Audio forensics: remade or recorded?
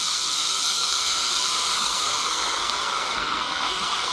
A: remade